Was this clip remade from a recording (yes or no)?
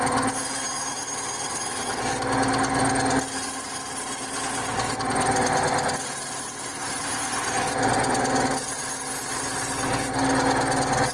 no